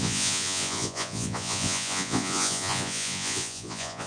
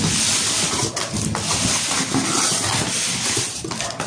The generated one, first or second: first